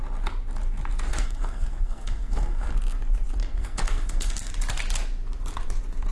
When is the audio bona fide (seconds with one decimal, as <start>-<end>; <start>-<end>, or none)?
0.0-1.1; 2.7-3.4; 4.5-6.1